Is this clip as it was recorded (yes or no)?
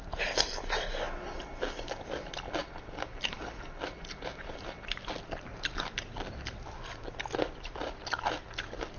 yes